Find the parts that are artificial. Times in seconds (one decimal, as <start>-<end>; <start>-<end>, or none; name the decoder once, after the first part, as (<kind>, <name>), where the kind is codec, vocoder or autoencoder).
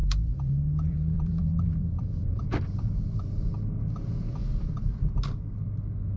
0.0-3.5 (vocoder, BigVGAN v2); 4.4-5.2